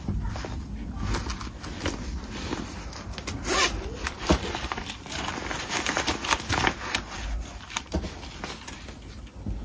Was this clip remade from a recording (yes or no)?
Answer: no